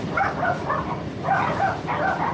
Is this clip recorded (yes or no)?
no